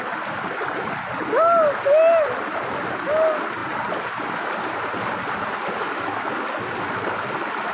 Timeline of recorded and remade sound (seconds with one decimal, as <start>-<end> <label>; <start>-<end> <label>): 0.0-7.7 recorded